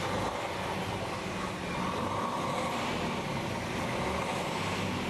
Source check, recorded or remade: recorded